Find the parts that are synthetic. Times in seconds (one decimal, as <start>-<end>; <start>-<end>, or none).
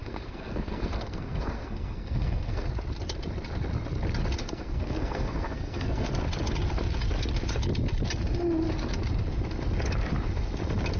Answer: 0.0-2.7; 4.4-6.1